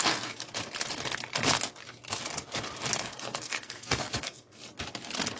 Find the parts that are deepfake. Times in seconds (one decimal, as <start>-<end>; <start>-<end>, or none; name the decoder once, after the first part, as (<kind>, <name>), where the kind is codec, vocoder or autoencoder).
0.0-0.4 (codec, SNAC); 3.0-4.6